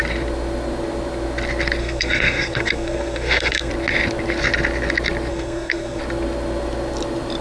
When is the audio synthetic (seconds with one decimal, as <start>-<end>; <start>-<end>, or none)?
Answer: 1.8-3.7; 5.3-6.0

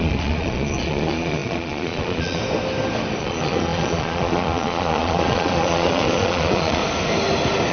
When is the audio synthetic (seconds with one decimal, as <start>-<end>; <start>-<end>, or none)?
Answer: 0.0-2.4; 3.2-6.8

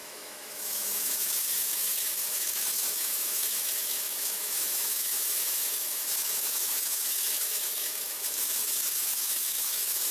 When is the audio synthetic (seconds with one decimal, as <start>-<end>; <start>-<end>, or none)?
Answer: 0.0-10.1

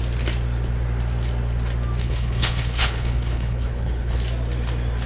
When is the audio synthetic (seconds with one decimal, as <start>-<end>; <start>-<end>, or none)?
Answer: 2.0-4.2

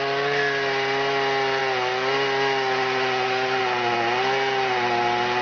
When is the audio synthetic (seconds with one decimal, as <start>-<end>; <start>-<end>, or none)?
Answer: none